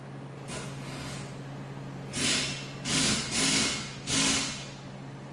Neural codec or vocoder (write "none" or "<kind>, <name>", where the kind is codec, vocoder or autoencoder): none